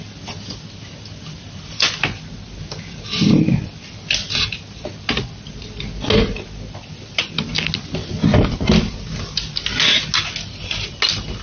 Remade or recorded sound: recorded